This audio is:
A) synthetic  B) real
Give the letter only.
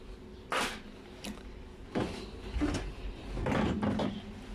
B